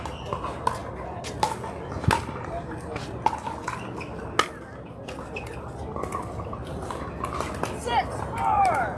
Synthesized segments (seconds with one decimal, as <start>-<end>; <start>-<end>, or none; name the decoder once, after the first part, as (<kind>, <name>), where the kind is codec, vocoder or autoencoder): none